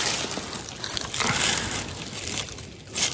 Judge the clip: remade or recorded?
recorded